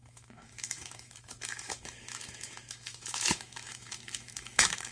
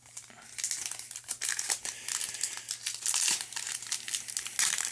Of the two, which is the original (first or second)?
second